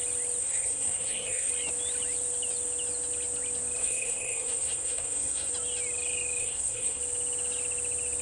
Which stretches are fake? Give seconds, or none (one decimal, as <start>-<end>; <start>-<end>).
0.4-1.5; 3.8-5.5; 6.4-7.0